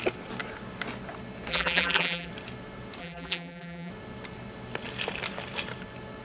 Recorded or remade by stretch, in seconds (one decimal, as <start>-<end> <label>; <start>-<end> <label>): 0.0-1.5 recorded; 1.5-2.3 remade; 2.3-3.0 recorded; 3.0-3.9 remade; 3.9-6.2 recorded